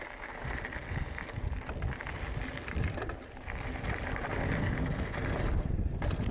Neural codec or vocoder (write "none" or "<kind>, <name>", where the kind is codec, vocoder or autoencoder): none